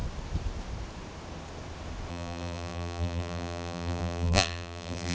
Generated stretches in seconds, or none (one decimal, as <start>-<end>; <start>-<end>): 2.1-5.1